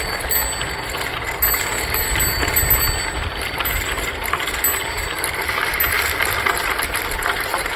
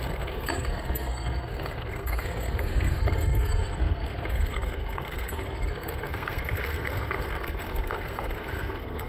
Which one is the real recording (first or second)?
first